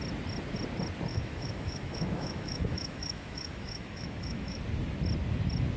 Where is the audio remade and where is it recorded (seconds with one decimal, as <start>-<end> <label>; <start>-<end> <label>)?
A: 0.0-1.1 recorded; 1.1-4.6 remade; 4.6-5.8 recorded